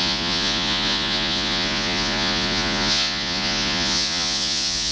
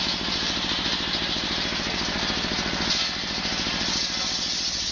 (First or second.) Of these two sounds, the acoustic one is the second